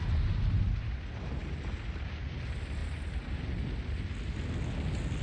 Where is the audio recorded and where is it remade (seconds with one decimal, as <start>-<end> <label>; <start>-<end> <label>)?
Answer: 0.0-5.2 recorded